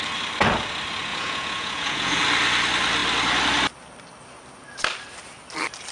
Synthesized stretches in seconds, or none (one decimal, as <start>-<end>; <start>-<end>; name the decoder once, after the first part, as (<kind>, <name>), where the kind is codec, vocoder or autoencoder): 1.1-2.2 (vocoder, Vocos)